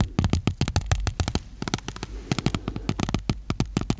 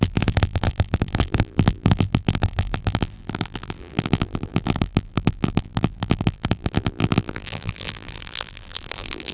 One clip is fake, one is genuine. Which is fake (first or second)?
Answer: second